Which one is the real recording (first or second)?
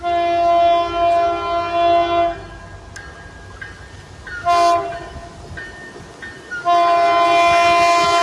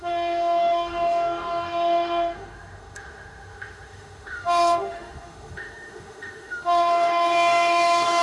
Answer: first